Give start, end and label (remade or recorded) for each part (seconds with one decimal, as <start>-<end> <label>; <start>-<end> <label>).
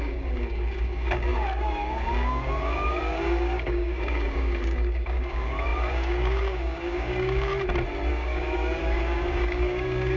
0.0-7.5 remade; 7.5-8.1 recorded; 8.1-10.2 remade